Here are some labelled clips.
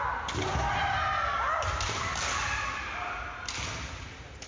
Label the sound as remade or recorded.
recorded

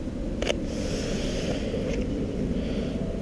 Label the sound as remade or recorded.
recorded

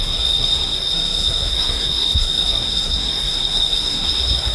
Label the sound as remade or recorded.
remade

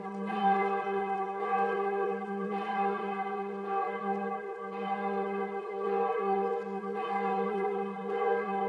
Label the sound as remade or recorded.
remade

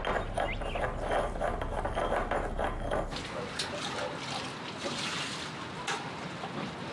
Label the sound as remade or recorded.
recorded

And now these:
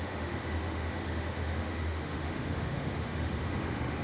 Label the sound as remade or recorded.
remade